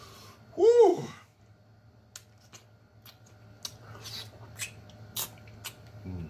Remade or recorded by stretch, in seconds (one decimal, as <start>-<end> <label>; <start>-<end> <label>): 0.0-0.9 recorded; 0.9-1.4 remade; 1.4-6.3 recorded